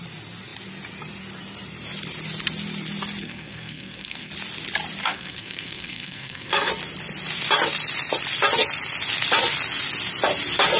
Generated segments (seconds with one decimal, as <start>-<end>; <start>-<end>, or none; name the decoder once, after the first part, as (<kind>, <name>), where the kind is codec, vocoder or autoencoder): 3.2-4.3 (codec, SNAC); 5.0-6.7

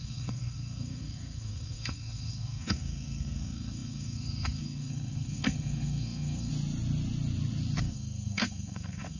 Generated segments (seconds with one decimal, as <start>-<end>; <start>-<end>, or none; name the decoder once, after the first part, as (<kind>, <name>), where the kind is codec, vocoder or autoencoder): 0.0-6.5 (codec, SNAC); 7.8-9.2